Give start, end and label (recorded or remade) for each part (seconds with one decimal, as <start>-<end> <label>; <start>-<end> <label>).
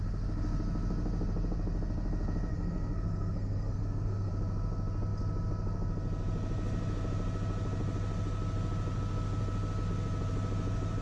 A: 0.0-2.5 recorded; 2.5-4.3 remade; 4.3-11.0 recorded